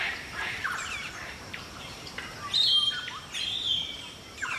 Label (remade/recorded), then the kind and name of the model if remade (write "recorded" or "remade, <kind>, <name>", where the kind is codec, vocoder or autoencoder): remade, vocoder, BigVGAN v2